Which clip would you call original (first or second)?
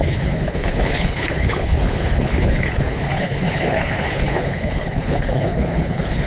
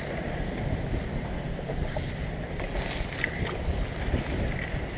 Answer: second